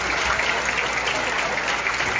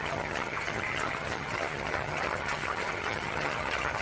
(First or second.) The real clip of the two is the first